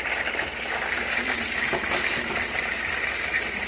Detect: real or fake real